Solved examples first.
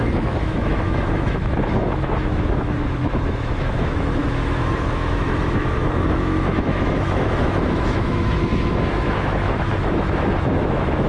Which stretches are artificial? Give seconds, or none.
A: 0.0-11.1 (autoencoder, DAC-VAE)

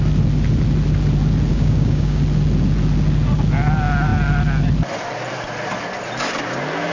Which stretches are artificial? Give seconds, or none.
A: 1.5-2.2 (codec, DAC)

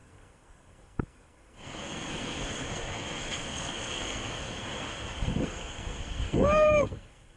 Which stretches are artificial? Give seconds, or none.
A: 0.0-7.4 (codec, SNAC)

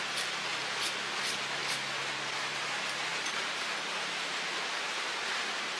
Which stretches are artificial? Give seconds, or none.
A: 3.1-5.8 (vocoder, BigVGAN v2)

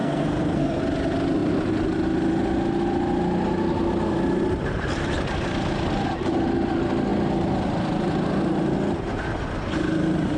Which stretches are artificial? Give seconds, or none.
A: 0.0-0.8 (codec, SNAC)

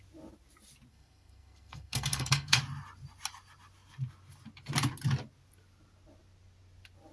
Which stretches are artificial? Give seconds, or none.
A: 0.9-2.6 (codec, SNAC)

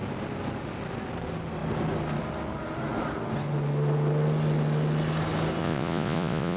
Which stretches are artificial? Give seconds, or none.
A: 5.6-6.6 (vocoder, Vocos)

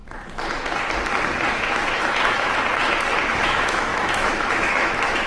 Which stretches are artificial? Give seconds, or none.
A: 1.5-2.5 (autoencoder, DAC-VAE); 3.3-5.3